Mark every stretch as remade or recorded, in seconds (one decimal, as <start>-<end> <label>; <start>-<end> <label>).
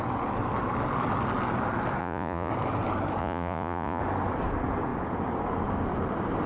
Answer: 0.0-2.0 recorded; 2.0-2.5 remade; 2.5-3.2 recorded; 3.2-4.0 remade; 4.0-6.5 recorded